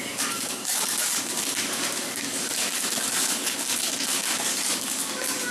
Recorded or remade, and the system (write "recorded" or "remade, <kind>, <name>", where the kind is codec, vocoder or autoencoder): remade, codec, DAC